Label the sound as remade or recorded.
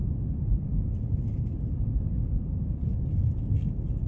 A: recorded